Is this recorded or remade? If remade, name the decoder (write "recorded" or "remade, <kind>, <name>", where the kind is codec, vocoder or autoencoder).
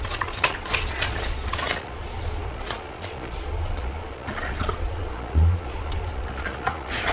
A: remade, vocoder, Vocos